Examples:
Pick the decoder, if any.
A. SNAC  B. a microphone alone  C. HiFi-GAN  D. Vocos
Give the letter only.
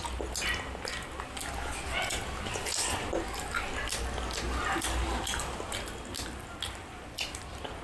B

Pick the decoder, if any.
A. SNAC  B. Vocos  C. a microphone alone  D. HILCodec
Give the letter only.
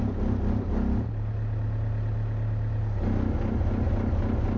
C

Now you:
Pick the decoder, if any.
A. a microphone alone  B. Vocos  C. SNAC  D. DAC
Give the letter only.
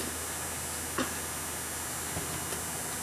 A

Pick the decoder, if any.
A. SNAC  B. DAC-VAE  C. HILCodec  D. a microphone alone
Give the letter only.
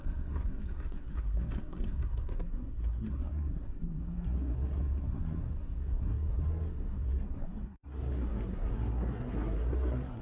A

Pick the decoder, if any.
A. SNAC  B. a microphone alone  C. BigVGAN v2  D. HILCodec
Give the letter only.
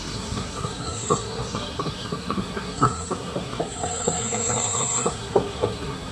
A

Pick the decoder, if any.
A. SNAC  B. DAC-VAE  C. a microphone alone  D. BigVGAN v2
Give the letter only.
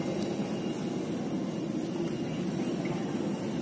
C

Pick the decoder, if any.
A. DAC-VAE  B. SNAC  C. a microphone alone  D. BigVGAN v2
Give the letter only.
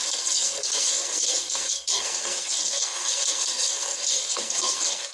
B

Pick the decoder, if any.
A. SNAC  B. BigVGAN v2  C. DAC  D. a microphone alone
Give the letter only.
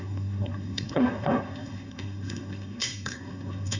A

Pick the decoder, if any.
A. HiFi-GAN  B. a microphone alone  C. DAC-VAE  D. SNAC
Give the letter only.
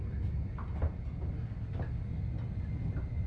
B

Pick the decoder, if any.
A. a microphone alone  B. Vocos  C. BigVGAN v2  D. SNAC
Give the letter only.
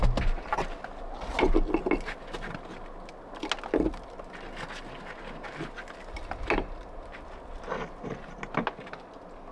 A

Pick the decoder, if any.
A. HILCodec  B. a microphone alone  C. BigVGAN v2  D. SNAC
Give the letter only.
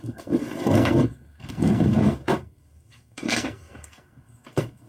D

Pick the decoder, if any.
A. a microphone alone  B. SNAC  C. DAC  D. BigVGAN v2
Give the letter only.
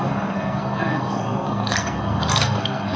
B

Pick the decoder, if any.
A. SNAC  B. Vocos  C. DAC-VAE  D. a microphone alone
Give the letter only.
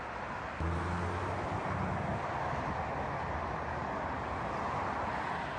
D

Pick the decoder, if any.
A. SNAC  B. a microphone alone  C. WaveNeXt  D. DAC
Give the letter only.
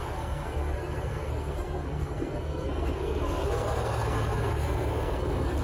A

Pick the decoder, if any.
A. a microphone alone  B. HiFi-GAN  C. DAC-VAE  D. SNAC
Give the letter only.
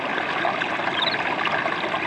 A